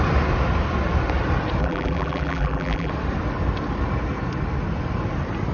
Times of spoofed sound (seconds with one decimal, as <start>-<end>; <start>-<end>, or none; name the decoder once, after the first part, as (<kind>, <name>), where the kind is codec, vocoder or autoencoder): 1.6-2.9 (vocoder, BigVGAN v2)

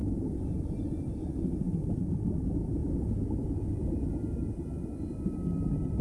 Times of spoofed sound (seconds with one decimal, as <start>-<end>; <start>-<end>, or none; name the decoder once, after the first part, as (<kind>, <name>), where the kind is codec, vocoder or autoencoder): none

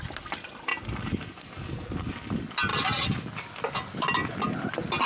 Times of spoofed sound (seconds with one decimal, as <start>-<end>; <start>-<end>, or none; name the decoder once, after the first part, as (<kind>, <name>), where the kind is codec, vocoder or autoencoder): none

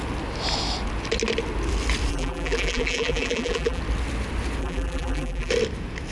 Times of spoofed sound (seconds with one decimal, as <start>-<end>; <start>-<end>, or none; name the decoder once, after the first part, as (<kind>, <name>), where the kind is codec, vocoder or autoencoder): 2.1-3.8 (vocoder, BigVGAN v2); 4.6-5.5

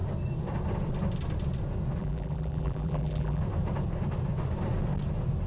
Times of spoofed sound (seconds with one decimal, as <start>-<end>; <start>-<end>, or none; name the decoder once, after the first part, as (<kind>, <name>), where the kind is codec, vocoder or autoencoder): 2.0-3.4 (vocoder, BigVGAN v2)

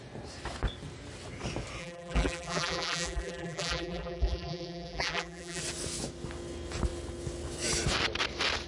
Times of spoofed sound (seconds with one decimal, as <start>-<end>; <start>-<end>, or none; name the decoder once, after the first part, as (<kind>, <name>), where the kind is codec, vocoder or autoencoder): 1.8-5.6 (vocoder, BigVGAN v2)

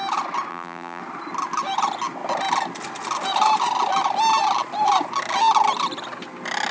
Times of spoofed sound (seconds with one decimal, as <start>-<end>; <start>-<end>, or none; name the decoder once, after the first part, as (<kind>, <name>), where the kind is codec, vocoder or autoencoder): 0.5-1.0 (vocoder, BigVGAN v2)

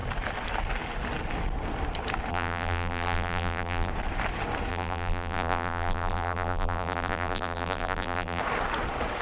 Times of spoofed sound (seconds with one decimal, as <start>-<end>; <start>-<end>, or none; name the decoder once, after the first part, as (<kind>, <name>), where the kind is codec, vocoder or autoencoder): 2.3-3.9 (vocoder, BigVGAN v2); 4.7-8.4